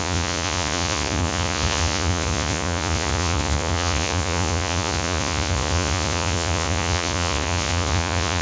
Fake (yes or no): yes